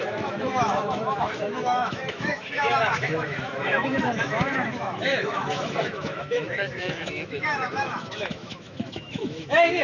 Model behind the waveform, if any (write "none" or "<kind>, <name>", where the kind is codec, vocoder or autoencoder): autoencoder, DAC-VAE